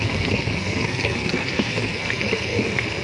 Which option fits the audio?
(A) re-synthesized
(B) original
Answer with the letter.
A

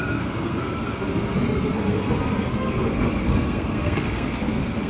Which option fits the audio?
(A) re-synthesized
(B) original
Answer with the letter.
A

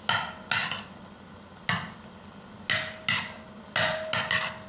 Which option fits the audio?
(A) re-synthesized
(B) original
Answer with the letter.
B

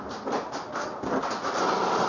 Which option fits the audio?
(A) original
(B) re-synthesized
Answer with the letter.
A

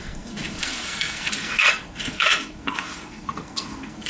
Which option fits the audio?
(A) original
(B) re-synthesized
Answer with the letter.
B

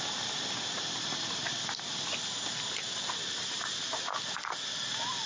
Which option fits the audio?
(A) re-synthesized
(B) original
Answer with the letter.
B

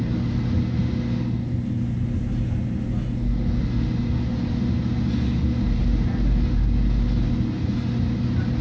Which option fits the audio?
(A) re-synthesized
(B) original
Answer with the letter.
B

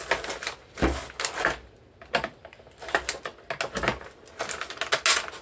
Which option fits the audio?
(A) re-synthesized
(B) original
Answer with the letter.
B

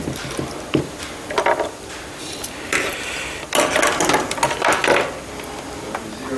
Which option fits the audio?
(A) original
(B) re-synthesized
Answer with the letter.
A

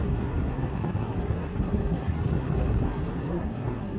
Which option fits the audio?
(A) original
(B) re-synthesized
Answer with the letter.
B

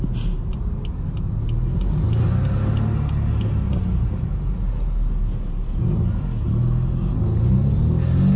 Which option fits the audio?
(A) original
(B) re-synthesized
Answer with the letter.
A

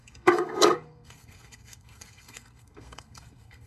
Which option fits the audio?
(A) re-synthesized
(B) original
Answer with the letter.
A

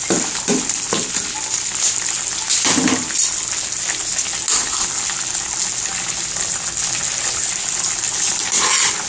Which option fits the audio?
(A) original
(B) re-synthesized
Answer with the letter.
A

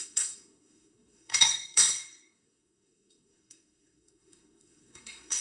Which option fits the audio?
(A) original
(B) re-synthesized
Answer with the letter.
B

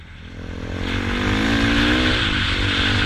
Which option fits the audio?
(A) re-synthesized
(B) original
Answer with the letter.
B